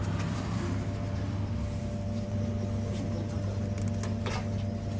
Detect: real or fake real